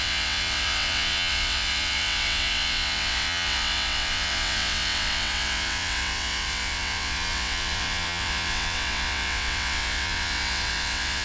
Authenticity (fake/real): fake